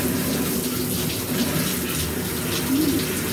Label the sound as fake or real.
real